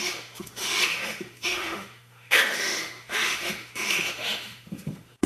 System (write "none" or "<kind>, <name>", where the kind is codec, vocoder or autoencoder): autoencoder, DAC-VAE